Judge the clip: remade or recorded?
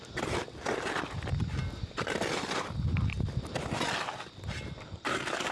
recorded